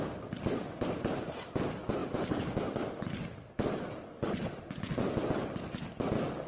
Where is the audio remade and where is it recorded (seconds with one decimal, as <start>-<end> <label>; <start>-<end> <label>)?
0.0-6.5 recorded